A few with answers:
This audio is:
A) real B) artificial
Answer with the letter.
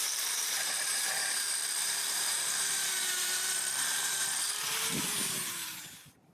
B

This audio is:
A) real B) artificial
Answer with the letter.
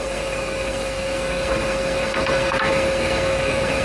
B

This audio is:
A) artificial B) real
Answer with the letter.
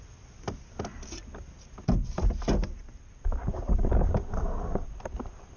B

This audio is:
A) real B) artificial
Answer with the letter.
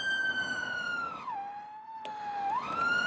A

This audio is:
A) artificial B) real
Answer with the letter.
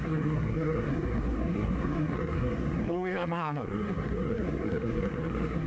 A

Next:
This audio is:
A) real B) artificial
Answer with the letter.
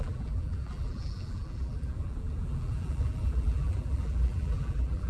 B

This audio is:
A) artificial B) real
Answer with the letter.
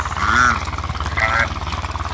B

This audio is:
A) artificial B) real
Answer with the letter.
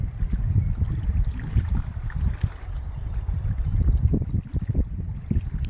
A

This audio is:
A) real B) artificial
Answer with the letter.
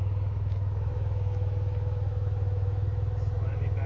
B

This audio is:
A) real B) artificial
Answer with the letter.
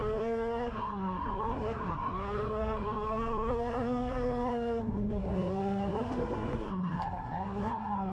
B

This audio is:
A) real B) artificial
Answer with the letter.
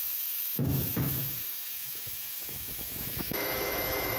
B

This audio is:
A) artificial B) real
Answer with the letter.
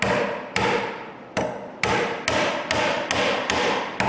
B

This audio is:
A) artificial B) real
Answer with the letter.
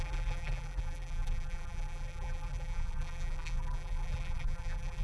A